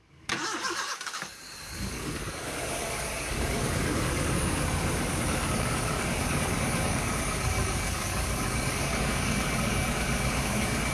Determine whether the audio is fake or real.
fake